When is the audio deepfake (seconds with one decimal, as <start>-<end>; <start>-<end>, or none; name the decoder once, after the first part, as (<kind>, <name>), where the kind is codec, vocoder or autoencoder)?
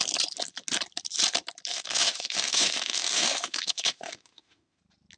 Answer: 1.7-4.8 (autoencoder, DAC-VAE)